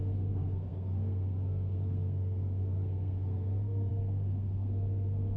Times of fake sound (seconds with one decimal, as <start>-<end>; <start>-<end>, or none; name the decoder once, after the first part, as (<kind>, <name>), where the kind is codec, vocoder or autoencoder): 0.0-5.4 (codec, SNAC)